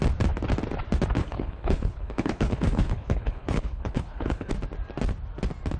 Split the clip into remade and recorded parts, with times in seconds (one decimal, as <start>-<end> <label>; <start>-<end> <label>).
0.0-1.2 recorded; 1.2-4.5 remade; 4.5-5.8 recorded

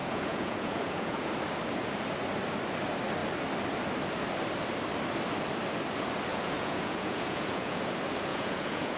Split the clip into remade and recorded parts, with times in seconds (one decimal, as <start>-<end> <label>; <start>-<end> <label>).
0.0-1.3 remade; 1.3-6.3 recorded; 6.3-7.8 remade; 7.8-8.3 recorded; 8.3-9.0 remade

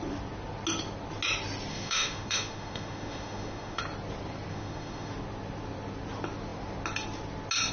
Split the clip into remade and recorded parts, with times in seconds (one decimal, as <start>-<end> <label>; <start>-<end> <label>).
0.0-1.7 recorded; 1.7-3.8 remade; 3.8-4.5 recorded; 4.5-5.1 remade; 5.1-7.7 recorded

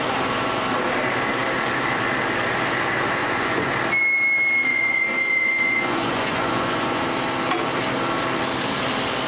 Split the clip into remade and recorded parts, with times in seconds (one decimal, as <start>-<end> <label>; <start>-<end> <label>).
0.0-3.2 recorded; 3.2-3.7 remade; 3.7-4.7 recorded; 4.7-7.0 remade; 7.0-9.3 recorded

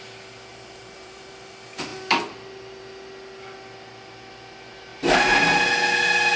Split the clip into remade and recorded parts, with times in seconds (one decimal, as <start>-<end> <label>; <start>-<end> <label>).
0.0-0.5 recorded; 0.5-1.3 remade; 1.3-6.4 recorded

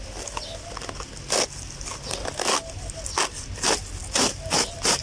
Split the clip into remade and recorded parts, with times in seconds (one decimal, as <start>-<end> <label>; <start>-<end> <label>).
0.0-5.0 recorded

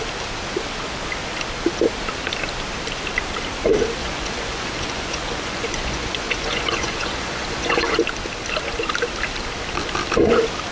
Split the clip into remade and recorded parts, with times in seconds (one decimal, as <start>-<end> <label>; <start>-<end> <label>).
0.0-4.0 recorded; 4.0-8.0 remade; 8.0-10.7 recorded